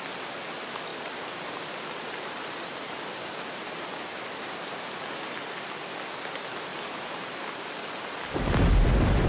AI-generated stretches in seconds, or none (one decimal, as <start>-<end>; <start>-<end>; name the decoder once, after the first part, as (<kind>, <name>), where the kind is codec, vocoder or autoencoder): 0.9-4.8 (vocoder, BigVGAN v2); 6.7-7.2